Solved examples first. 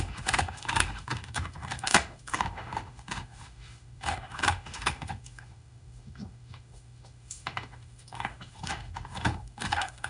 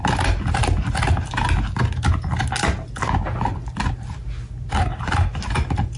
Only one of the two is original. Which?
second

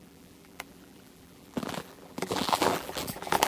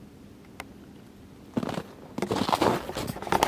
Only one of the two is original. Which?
second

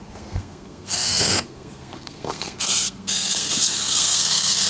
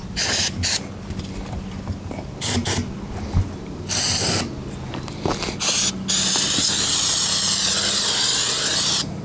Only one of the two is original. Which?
second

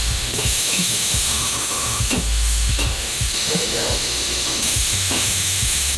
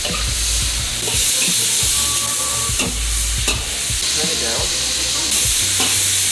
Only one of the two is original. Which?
second